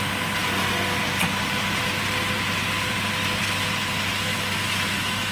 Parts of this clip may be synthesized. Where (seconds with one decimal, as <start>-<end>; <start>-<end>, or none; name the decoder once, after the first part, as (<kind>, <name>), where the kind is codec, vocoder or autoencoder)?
4.3-5.3 (autoencoder, DAC-VAE)